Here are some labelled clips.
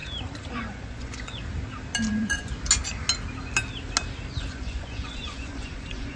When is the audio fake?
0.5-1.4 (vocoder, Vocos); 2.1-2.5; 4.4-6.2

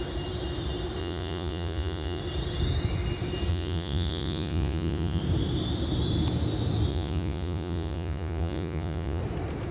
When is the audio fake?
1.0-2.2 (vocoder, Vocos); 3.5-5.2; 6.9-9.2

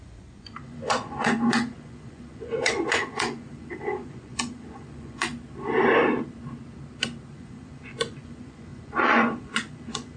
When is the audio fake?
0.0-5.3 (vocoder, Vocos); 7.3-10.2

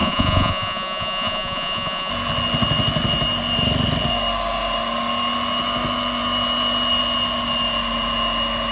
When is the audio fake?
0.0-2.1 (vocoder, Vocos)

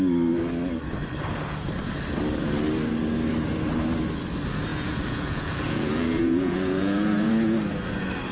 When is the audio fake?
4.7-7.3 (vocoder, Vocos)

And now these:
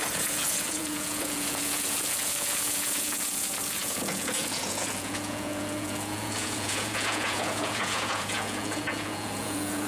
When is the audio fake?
0.0-9.9 (vocoder, Vocos)

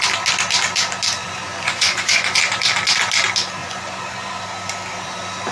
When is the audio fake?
1.2-2.4 (vocoder, Vocos); 3.6-4.4

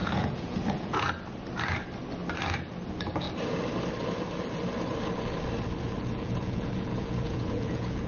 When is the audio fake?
0.0-1.1 (vocoder, Vocos); 5.8-8.1